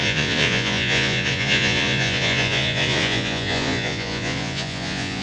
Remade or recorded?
remade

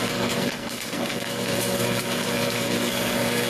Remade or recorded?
remade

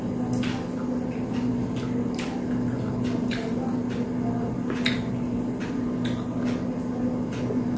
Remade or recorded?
recorded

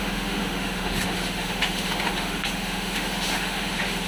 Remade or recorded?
remade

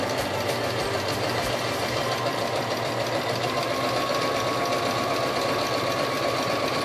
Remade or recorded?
recorded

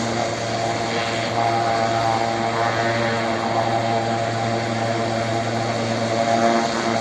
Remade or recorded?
recorded